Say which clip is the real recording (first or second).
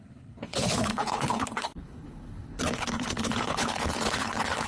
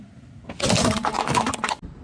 second